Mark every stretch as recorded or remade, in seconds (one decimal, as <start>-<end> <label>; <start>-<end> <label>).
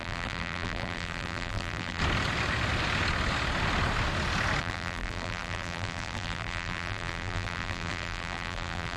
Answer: 0.0-2.0 remade; 2.0-4.6 recorded; 4.6-9.0 remade